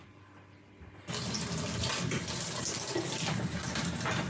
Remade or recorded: recorded